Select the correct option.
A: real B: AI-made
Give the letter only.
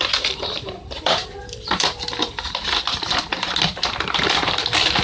B